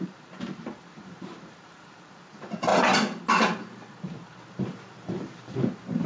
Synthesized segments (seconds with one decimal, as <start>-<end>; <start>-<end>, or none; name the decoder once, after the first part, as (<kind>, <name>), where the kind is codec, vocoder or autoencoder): 0.0-2.7 (vocoder, BigVGAN v2); 4.5-6.1